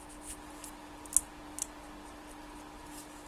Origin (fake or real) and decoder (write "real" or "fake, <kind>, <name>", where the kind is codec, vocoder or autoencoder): real